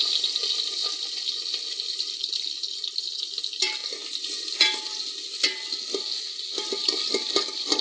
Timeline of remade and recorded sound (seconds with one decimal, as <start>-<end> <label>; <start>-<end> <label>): 0.0-7.8 recorded